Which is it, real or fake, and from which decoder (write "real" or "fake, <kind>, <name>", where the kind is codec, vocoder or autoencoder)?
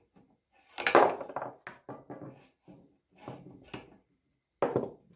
real